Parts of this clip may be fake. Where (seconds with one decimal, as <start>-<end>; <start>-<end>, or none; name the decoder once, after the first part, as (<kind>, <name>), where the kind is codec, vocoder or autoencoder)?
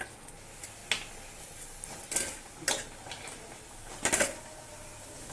none